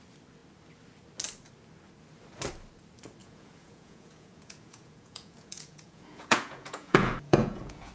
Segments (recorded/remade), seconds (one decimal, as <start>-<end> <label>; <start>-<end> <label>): 0.0-3.2 recorded; 3.2-7.9 remade